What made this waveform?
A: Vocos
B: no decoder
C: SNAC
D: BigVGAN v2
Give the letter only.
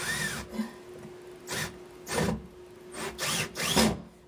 B